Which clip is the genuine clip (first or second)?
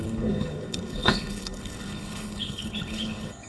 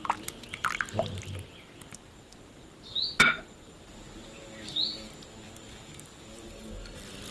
second